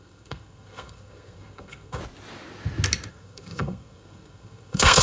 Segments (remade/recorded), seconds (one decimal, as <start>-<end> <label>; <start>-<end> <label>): 0.0-2.0 remade; 2.0-3.1 recorded; 3.1-5.0 remade